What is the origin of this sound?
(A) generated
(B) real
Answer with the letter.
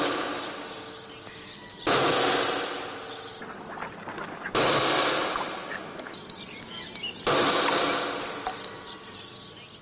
B